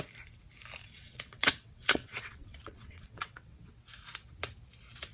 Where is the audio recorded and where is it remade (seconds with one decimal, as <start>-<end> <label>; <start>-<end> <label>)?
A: 0.0-0.8 recorded; 0.8-3.7 remade; 3.7-5.1 recorded